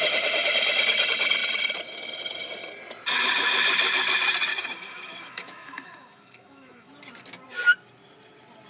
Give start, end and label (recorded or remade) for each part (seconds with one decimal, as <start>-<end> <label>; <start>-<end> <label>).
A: 0.0-4.5 recorded; 4.5-6.9 remade; 6.9-8.7 recorded